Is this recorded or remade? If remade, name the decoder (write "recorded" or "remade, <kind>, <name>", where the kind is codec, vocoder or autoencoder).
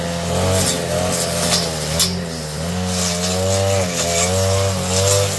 recorded